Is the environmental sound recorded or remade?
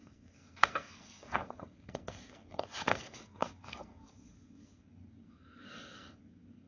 remade